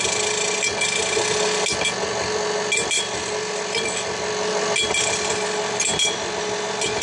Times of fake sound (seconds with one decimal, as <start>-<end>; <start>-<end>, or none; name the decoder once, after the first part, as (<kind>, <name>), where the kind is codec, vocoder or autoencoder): none